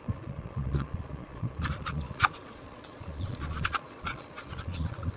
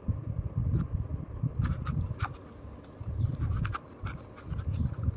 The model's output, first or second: first